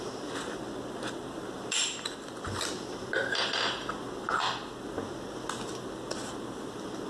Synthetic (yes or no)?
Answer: no